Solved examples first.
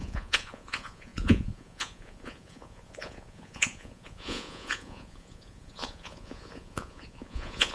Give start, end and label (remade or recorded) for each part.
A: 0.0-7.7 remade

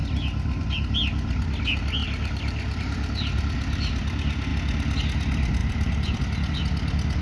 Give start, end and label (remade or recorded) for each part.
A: 0.0-2.0 recorded; 2.0-2.8 remade; 2.8-5.6 recorded; 5.6-6.2 remade; 6.2-7.2 recorded